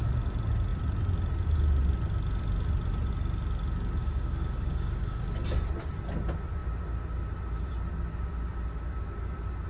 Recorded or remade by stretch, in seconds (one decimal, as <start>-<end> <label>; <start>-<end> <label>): 0.0-4.0 recorded; 4.0-5.2 remade; 5.2-9.7 recorded